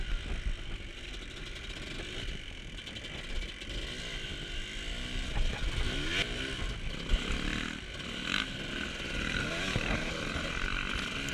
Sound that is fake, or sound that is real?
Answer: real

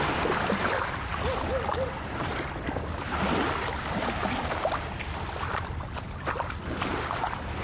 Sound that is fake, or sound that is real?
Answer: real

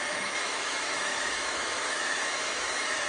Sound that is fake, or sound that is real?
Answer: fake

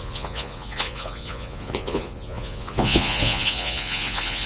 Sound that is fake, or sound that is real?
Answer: fake